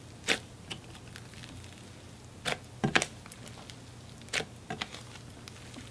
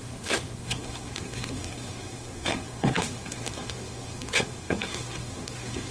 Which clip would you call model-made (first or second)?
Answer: second